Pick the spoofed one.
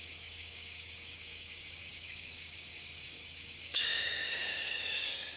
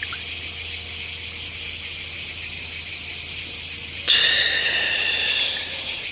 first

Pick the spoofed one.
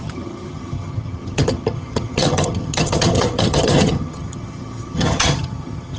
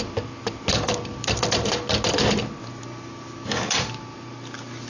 first